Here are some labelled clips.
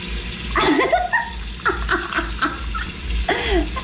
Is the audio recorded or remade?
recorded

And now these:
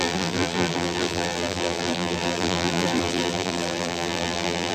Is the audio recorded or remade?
remade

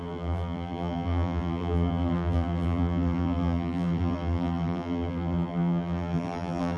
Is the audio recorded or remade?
remade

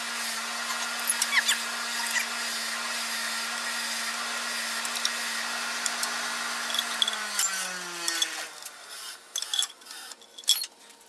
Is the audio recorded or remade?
recorded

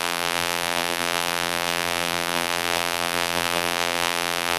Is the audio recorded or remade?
remade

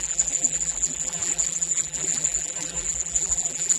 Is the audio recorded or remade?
remade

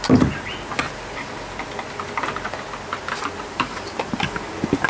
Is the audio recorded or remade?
recorded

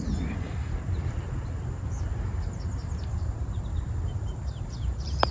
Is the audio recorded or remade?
remade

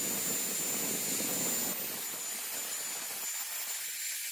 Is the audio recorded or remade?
recorded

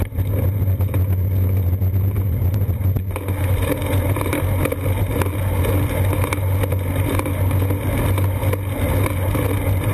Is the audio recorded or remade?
recorded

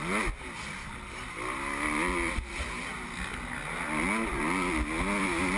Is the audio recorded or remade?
recorded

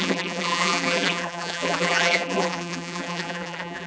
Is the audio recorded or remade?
remade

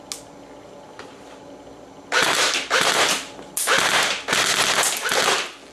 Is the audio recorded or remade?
recorded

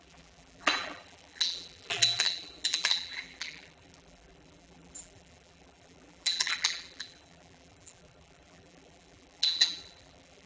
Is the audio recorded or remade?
remade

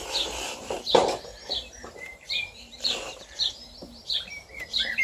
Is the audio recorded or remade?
remade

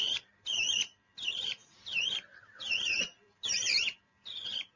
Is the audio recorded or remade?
remade